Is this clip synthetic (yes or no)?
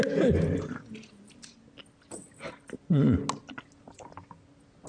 no